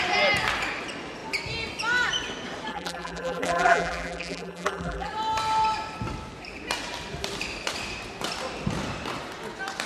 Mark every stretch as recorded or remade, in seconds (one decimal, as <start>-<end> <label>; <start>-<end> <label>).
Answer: 0.0-2.7 recorded; 2.7-5.1 remade; 5.1-9.9 recorded